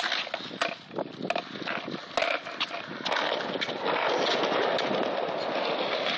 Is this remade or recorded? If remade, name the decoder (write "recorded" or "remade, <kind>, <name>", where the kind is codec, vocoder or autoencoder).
recorded